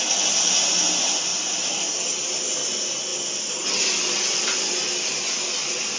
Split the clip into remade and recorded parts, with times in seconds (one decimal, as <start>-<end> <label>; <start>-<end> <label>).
0.0-1.3 recorded; 1.3-2.0 remade; 2.0-3.1 recorded; 3.1-4.5 remade; 4.5-6.0 recorded